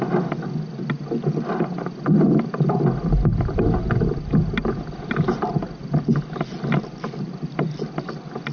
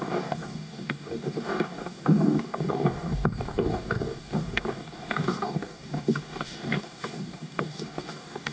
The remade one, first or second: second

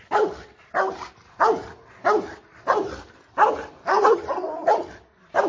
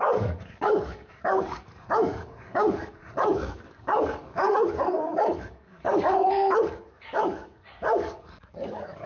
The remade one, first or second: second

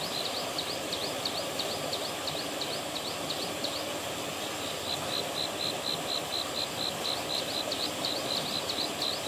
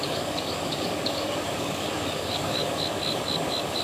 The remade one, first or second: second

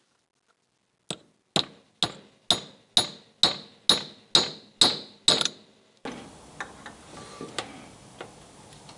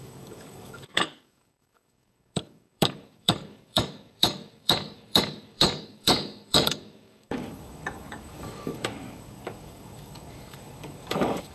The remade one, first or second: second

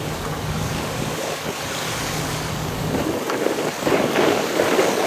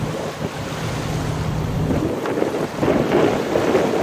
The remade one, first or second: first